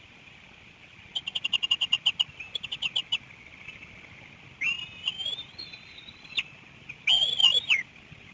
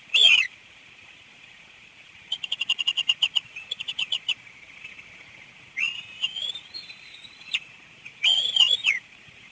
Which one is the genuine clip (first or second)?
first